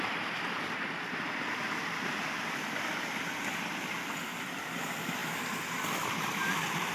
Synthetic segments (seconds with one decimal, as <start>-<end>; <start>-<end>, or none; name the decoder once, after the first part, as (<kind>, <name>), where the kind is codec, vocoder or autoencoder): none